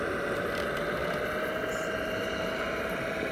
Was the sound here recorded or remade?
recorded